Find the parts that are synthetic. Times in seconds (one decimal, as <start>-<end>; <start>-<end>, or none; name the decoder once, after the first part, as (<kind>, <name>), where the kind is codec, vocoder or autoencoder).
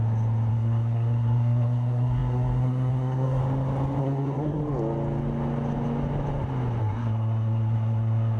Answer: 0.5-3.4 (codec, SNAC); 4.0-4.6; 6.8-8.4